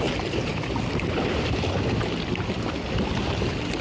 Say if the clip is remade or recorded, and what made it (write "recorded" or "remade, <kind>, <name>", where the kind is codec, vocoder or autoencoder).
recorded